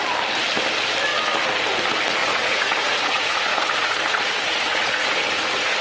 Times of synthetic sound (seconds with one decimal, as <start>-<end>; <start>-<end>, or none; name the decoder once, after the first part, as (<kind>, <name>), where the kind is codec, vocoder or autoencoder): 2.2-5.8 (vocoder, Vocos)